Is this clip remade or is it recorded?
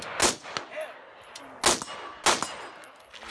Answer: recorded